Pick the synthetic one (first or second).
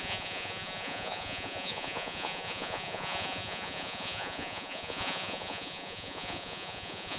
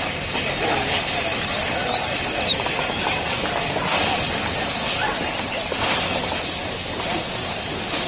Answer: first